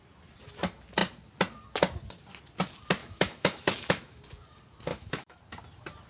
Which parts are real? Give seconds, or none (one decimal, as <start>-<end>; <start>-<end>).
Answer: 0.0-3.0; 4.2-4.9; 5.4-6.1